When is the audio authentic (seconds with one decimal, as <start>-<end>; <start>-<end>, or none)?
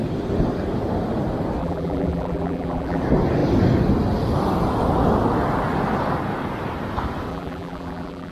0.0-1.6; 3.0-7.3